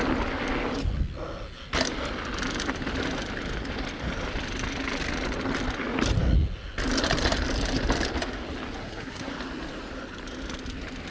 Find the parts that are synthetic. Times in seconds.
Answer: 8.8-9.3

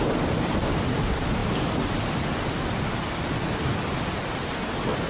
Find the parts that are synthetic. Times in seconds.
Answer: 0.0-5.1

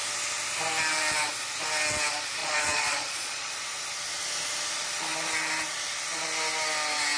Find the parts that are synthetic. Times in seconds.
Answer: 2.4-3.5

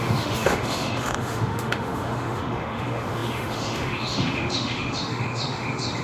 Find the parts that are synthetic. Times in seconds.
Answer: 0.0-6.0

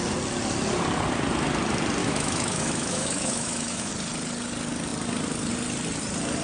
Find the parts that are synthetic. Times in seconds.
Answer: 2.0-3.9

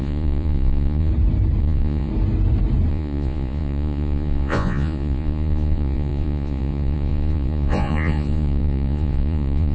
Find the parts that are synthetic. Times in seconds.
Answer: 0.0-1.1; 1.6-2.1; 2.9-9.7

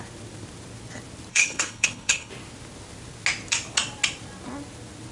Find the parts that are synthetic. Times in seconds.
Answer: 1.3-2.3

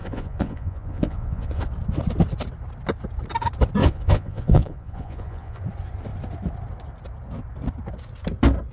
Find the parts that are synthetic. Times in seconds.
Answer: 0.0-1.6; 3.8-5.6